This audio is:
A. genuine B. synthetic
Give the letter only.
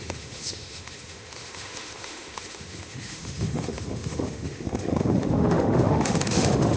B